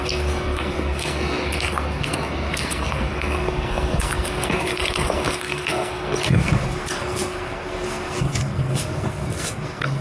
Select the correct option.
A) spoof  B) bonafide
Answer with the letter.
A